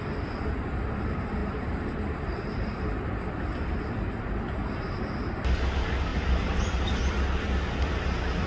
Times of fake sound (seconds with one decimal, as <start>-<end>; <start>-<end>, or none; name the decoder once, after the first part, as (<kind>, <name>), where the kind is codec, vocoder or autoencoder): 1.4-3.2 (vocoder, BigVGAN v2); 6.1-6.6